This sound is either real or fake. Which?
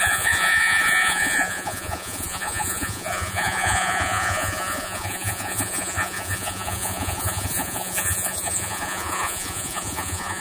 fake